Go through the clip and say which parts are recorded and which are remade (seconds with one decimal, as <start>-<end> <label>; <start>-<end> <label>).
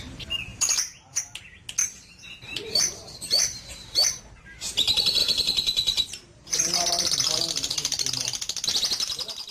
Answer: 0.0-0.5 recorded; 0.5-1.2 remade; 1.2-1.8 recorded; 1.8-4.2 remade; 4.2-5.2 recorded; 5.2-6.7 remade; 6.7-9.5 recorded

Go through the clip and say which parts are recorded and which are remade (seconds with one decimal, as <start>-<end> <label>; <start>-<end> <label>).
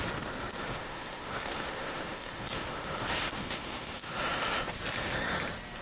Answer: 0.0-0.6 recorded; 0.6-4.1 remade; 4.1-5.8 recorded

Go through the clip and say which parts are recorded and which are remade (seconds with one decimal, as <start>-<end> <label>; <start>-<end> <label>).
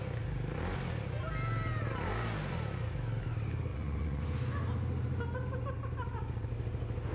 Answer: 0.0-3.7 recorded; 3.7-4.2 remade; 4.2-7.1 recorded